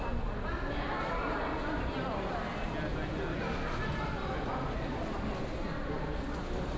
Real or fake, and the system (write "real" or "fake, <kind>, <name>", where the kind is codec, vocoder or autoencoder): real